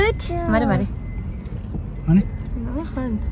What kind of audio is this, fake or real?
real